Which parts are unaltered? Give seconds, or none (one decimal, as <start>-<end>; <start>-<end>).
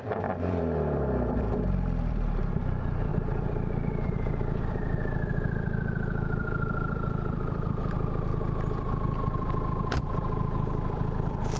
none